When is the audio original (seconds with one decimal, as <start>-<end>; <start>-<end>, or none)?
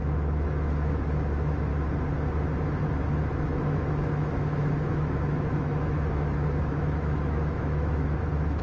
1.7-3.3